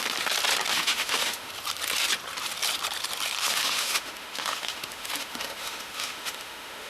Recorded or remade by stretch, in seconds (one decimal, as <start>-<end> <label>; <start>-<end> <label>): 0.0-0.7 recorded; 0.7-1.5 remade; 1.5-3.4 recorded; 3.4-6.9 remade